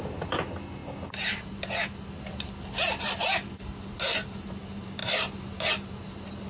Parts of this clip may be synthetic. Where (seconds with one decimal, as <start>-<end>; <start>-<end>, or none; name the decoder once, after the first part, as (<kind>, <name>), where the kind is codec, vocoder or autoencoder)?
none